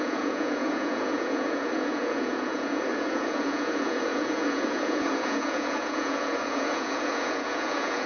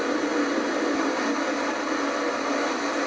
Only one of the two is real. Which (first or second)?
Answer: second